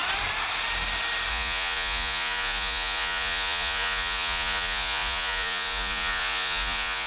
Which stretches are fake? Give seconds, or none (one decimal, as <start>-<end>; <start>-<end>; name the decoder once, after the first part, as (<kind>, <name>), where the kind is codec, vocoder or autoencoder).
1.3-7.1 (vocoder, Vocos)